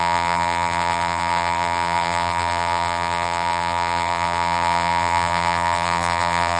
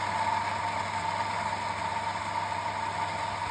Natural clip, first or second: second